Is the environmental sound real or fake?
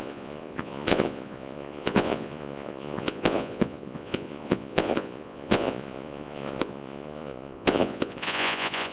fake